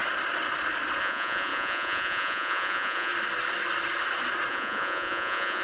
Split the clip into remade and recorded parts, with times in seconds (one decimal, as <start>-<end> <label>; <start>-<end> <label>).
0.0-1.0 recorded; 1.0-3.1 remade; 3.1-4.5 recorded; 4.5-5.6 remade